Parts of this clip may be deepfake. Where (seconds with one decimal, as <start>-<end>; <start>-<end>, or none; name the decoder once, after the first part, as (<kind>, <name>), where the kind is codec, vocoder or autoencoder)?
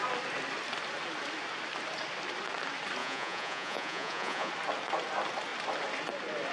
3.0-4.5 (vocoder, Vocos)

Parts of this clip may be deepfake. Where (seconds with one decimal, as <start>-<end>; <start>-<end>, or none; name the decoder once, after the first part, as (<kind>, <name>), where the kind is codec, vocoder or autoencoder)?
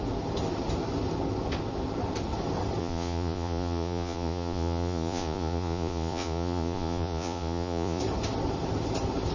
2.8-8.0 (vocoder, Vocos)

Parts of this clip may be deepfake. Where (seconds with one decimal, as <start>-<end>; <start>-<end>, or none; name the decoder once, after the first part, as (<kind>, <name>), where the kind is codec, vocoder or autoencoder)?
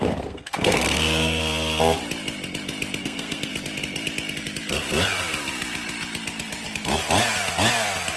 0.0-1.4 (codec, SNAC); 3.0-3.5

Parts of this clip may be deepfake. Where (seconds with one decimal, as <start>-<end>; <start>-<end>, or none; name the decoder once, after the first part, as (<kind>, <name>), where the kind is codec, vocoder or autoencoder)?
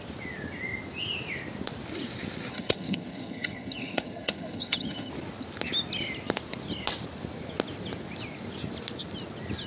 2.5-5.1 (vocoder, HiFi-GAN)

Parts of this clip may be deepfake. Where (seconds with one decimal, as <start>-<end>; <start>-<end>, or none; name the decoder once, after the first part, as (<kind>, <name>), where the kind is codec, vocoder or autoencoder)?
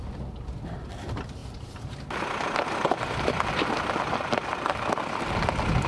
none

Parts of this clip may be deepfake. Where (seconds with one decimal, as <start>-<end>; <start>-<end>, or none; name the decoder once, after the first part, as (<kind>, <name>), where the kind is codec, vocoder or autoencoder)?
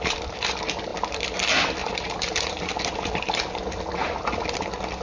1.8-2.5 (vocoder, BigVGAN v2)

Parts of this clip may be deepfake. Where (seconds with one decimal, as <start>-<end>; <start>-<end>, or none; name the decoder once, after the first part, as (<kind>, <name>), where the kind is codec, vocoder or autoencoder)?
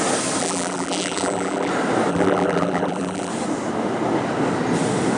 0.4-1.7 (vocoder, BigVGAN v2); 2.1-3.3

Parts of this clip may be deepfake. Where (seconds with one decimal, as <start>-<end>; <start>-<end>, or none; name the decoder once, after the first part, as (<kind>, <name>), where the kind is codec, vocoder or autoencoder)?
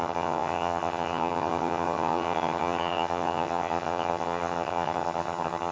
0.0-5.7 (vocoder, HiFi-GAN)